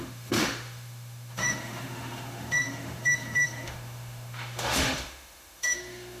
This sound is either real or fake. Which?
fake